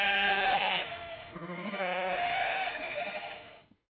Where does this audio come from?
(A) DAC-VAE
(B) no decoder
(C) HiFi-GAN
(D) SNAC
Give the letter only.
A